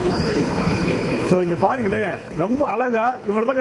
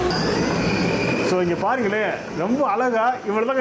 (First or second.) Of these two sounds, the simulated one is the first